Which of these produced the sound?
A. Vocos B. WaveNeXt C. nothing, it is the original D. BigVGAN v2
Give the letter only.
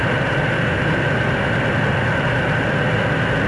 C